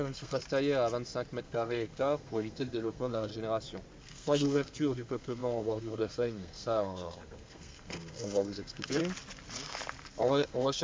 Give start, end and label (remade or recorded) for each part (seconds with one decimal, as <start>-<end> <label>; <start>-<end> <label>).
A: 0.0-0.4 remade; 0.4-1.4 recorded; 1.4-3.3 remade; 3.3-4.0 recorded; 4.0-9.0 remade; 9.0-10.2 recorded; 10.2-10.8 remade